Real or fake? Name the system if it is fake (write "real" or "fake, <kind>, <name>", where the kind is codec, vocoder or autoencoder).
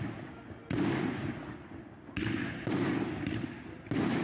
real